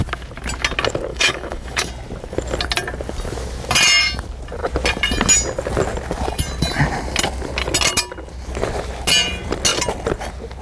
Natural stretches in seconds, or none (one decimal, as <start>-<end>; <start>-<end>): 0.0-1.1; 1.9-10.6